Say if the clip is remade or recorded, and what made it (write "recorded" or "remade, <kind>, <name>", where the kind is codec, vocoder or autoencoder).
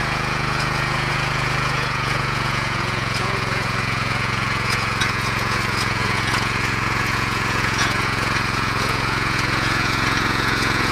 remade, vocoder, Vocos